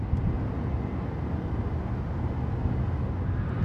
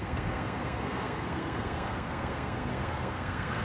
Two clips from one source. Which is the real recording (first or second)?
first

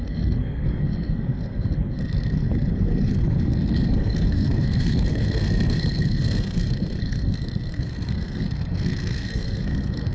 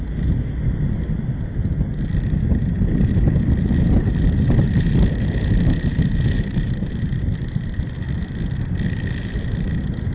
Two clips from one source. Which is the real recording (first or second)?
second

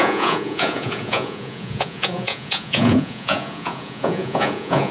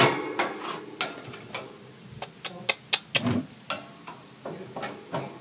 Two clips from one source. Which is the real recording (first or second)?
second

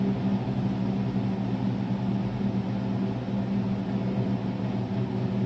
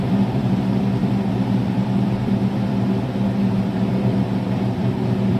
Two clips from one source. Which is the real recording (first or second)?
first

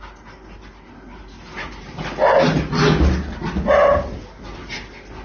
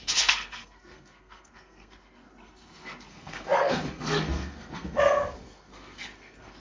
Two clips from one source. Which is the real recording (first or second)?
first